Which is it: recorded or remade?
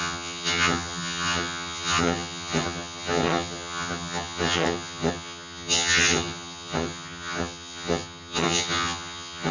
remade